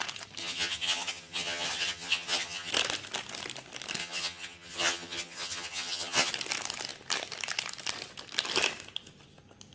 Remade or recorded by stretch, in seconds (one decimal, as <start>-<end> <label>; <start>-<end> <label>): 0.0-0.4 recorded; 0.4-2.7 remade; 2.7-4.0 recorded; 4.0-6.3 remade; 6.3-9.7 recorded